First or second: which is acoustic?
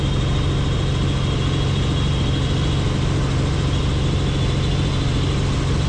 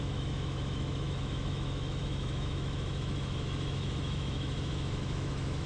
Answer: first